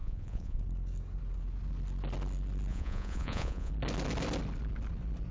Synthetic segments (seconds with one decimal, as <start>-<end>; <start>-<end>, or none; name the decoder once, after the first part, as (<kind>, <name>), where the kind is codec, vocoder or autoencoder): 0.0-0.6 (vocoder, Vocos); 2.7-3.7